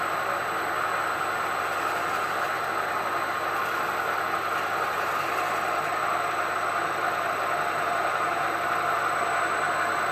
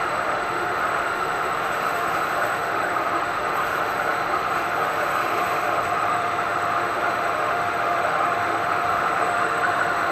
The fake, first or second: second